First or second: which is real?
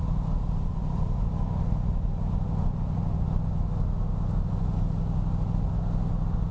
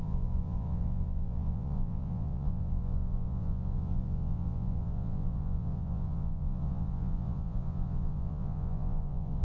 first